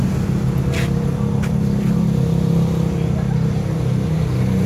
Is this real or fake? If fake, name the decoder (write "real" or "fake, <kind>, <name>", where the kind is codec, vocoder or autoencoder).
real